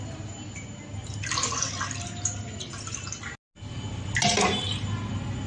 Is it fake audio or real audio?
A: real